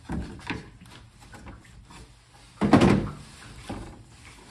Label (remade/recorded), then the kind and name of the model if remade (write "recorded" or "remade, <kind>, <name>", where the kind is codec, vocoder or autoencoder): recorded